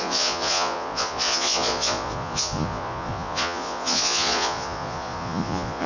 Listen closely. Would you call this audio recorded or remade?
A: remade